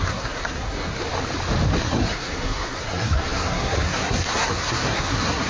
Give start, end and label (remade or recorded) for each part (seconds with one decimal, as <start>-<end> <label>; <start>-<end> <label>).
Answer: 0.0-1.0 remade; 1.0-1.8 recorded; 1.8-5.5 remade